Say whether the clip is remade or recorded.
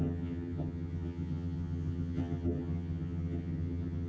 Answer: remade